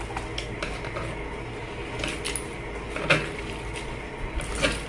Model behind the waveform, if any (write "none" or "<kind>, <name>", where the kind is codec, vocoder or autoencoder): none